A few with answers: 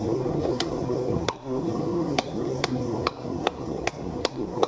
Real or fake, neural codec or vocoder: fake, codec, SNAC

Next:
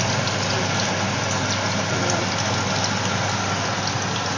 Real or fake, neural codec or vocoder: real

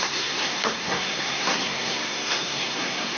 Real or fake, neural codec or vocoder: fake, codec, SNAC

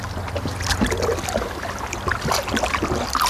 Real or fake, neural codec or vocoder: real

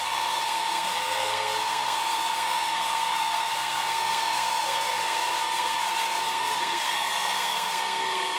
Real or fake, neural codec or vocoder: fake, codec, SNAC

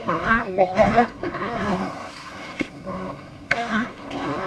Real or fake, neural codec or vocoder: fake, codec, SNAC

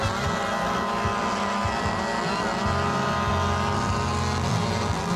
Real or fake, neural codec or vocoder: real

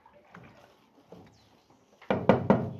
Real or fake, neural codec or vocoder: real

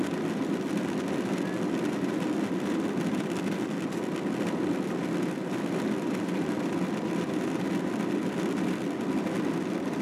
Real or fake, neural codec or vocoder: real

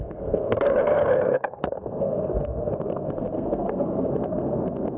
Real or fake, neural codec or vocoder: fake, codec, SNAC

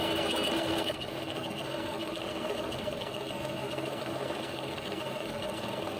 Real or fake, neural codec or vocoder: fake, codec, SNAC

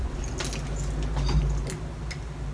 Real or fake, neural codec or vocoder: real